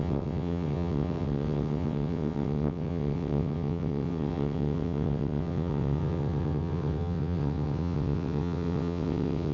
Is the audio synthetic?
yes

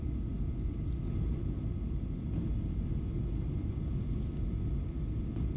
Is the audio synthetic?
no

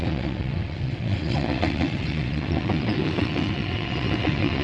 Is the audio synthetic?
yes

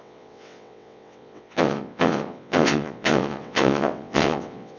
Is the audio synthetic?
yes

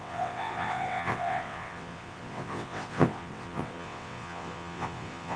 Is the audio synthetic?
yes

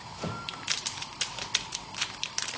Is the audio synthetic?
no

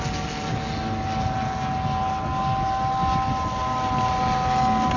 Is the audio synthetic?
no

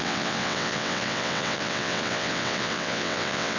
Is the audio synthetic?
yes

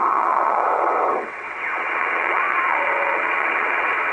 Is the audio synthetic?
yes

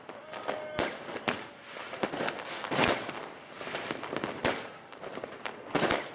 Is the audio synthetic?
no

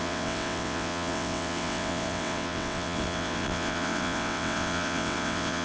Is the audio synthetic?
yes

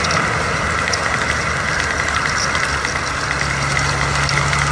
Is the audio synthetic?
no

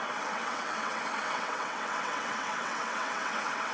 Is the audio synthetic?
yes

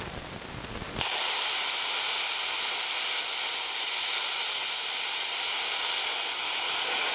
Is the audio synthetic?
no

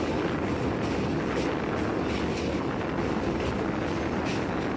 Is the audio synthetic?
no